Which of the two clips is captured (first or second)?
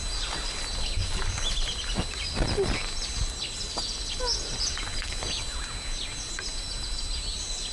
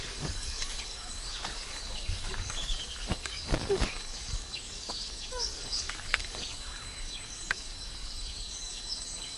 first